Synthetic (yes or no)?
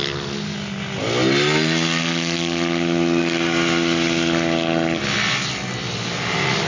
no